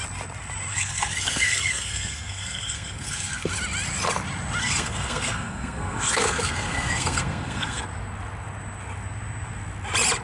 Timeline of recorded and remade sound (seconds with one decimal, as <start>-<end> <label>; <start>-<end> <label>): 0.0-0.7 recorded; 0.7-3.5 remade; 3.5-4.6 recorded; 4.6-7.8 remade; 7.8-10.2 recorded